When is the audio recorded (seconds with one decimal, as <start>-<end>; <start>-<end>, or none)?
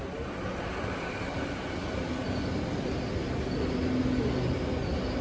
0.0-5.2